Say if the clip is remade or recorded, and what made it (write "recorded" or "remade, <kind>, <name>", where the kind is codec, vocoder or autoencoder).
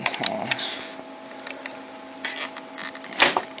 recorded